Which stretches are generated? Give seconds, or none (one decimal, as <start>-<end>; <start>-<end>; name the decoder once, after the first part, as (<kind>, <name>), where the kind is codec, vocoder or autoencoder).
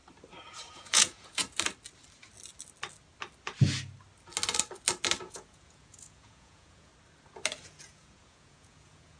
0.7-1.4 (vocoder, Vocos); 5.2-6.9; 7.6-9.2